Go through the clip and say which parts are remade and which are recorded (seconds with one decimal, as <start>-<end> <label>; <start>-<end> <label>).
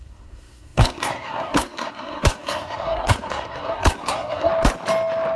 0.0-4.5 remade; 4.5-5.4 recorded